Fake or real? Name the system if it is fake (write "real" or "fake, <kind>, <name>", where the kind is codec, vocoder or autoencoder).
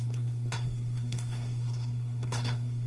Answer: fake, codec, SNAC